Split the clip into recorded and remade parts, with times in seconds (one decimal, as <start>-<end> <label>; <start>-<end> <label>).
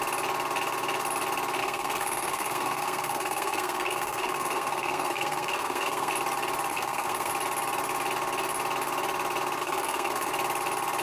0.0-1.6 recorded; 1.6-6.1 remade; 6.1-6.7 recorded; 6.7-7.3 remade; 7.3-9.6 recorded; 9.6-10.3 remade; 10.3-11.0 recorded